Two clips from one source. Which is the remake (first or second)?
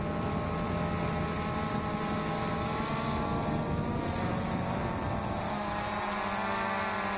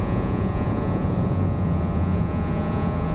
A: second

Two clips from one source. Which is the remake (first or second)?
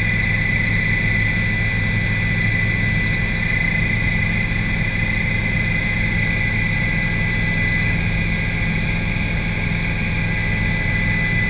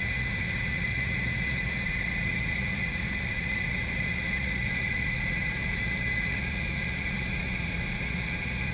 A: second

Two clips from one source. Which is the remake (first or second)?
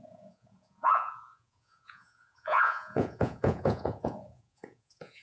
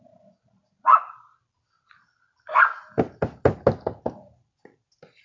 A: first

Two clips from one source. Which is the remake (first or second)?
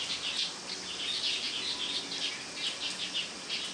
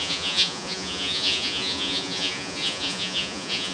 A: second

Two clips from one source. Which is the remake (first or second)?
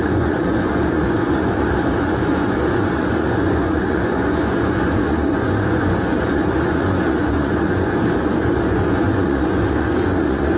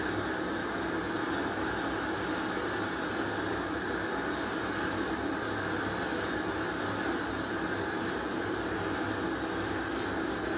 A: first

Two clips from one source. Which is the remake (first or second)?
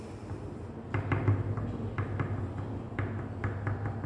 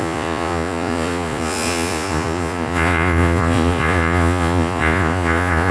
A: second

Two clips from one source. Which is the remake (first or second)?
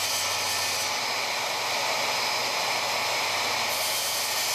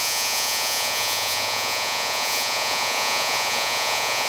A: second